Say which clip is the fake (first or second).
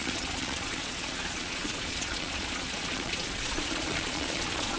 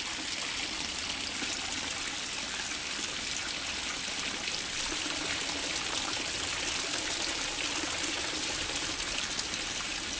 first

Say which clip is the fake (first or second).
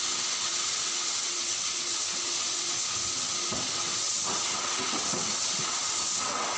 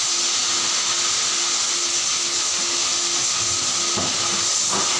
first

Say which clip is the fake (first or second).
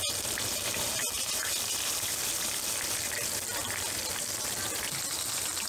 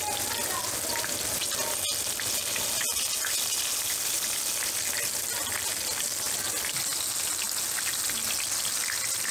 first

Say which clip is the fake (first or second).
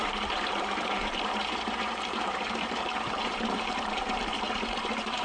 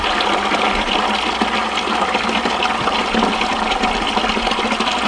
first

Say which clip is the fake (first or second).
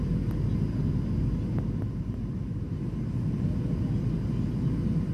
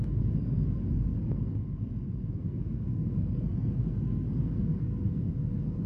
second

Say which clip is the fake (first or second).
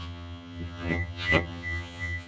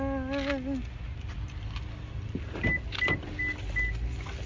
first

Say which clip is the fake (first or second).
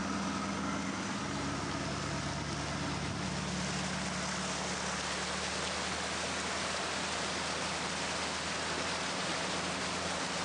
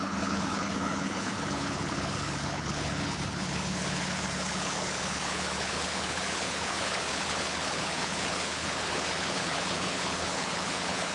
second